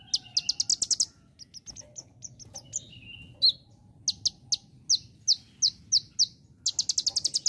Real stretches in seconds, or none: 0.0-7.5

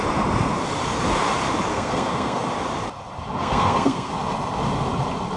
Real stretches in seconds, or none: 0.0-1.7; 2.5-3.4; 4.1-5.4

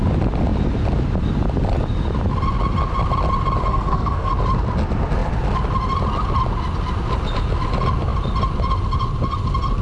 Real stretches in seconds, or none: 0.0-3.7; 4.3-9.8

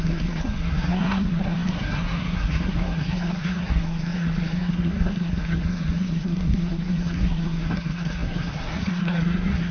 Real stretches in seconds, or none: none